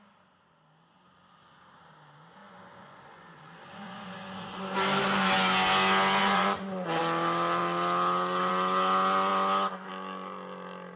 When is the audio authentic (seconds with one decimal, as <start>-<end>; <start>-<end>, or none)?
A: 0.0-2.4; 4.6-6.2; 7.0-11.0